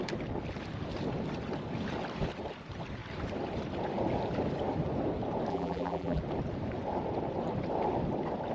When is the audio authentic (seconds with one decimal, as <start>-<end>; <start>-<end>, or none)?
0.0-5.5; 6.2-8.5